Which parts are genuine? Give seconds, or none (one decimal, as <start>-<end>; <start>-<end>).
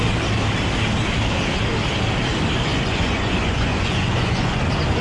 0.0-2.7; 4.6-5.0